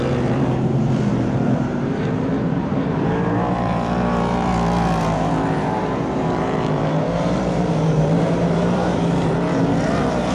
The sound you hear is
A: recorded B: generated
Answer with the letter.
B